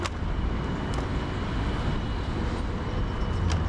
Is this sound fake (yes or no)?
no